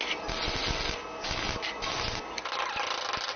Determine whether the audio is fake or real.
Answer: real